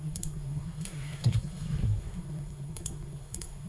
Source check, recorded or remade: remade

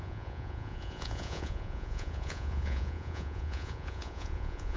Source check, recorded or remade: remade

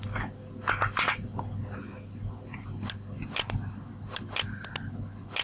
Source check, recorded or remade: recorded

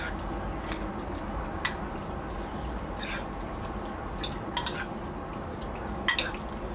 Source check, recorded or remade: recorded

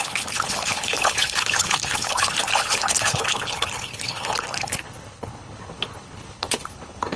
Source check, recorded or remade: remade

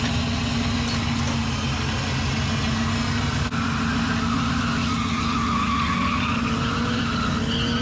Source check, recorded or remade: recorded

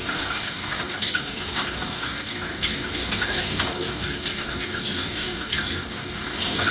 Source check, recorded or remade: remade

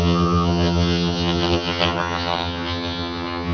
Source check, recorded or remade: remade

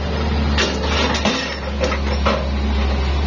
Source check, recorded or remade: recorded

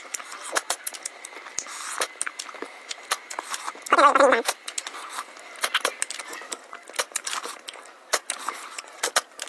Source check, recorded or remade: recorded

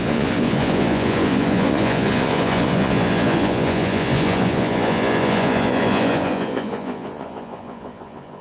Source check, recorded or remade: remade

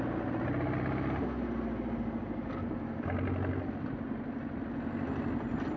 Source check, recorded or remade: recorded